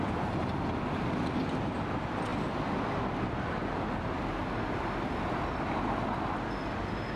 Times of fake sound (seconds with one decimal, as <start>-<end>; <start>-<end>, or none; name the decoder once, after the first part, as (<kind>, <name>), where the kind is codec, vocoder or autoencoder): none